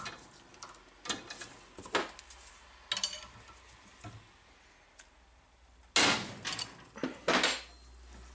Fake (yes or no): no